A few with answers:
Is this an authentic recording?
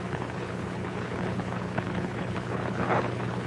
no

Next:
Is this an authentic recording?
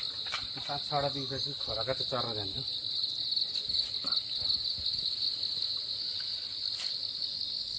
yes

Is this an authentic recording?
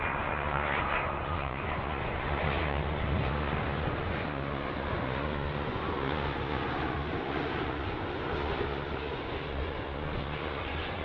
no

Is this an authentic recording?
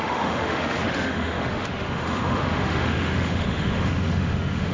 no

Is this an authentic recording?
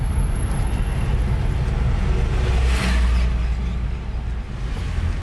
yes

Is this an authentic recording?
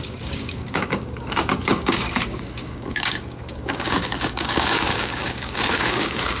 no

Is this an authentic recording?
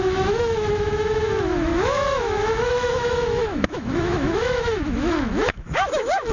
no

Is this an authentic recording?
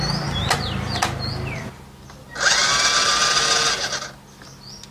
yes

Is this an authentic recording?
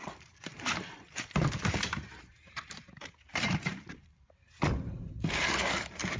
no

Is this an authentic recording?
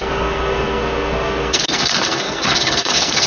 no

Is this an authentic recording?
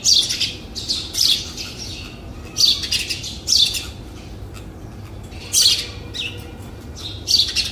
yes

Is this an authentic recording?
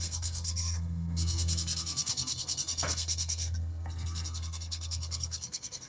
no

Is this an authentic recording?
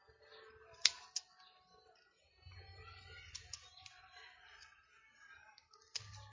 yes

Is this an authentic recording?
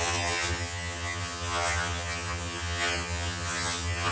no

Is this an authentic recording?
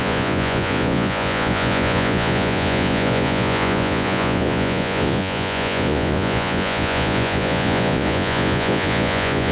no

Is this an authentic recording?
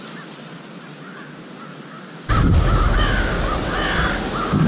yes